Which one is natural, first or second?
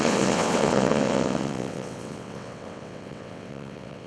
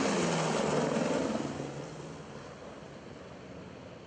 second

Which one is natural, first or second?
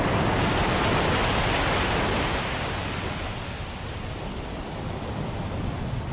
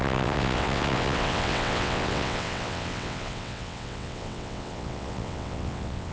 first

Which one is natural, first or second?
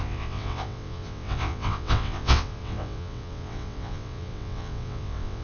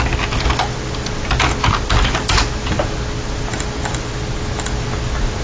second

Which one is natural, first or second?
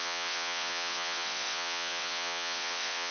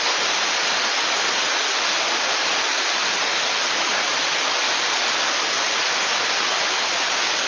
second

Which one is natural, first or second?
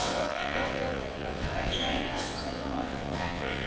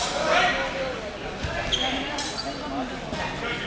second